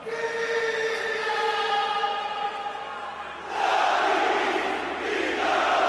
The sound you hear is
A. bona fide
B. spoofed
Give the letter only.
A